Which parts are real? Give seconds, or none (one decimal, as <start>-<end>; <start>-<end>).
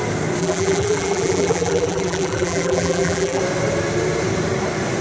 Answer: 0.0-0.4; 3.4-5.0